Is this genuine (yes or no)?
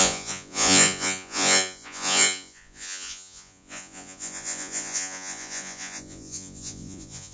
no